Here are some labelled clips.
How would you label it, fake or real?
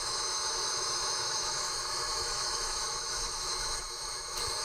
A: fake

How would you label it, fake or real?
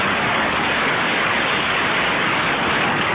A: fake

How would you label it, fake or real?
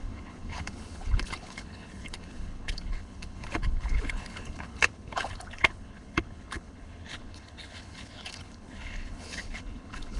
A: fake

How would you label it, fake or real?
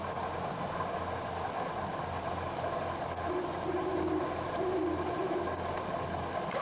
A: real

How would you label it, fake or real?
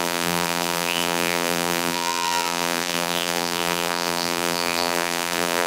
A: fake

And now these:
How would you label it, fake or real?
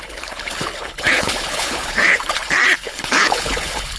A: fake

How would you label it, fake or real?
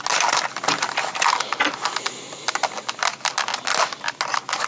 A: real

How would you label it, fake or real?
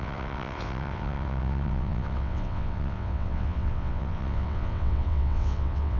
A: fake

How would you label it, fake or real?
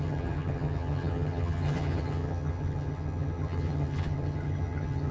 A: fake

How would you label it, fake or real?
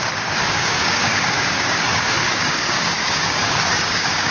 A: fake